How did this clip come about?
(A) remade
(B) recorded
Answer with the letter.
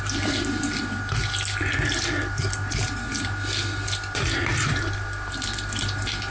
B